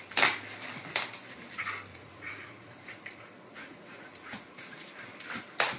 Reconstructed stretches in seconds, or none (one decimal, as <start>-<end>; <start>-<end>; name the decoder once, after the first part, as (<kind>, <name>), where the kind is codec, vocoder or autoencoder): 1.9-5.1 (vocoder, Vocos)